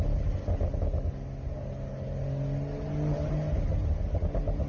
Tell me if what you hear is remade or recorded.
recorded